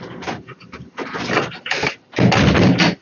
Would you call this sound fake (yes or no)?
no